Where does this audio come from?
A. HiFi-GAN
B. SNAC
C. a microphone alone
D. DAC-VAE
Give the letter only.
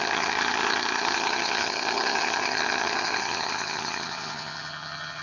A